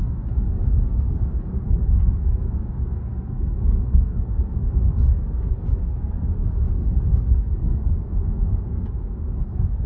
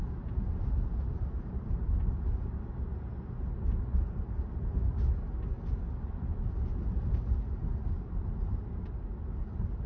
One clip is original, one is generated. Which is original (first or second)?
second